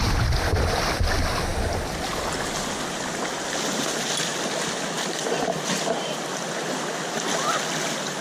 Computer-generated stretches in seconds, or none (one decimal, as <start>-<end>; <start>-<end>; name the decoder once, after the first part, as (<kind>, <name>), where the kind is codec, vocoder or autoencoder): none